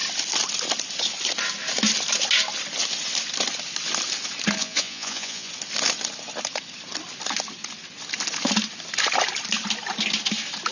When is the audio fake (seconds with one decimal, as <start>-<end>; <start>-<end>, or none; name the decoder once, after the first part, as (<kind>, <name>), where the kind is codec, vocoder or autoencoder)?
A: 4.6-5.5 (vocoder, Vocos)